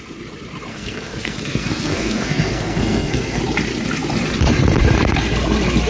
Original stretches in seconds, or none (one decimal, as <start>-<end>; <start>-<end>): 0.0-0.7; 3.4-5.9